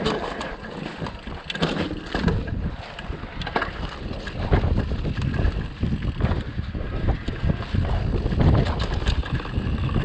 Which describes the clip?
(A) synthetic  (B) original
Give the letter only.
B